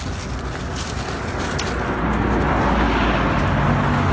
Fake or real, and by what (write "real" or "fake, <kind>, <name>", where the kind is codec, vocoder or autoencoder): real